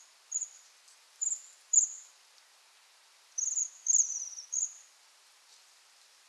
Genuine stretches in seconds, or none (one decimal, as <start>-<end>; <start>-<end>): 0.0-6.3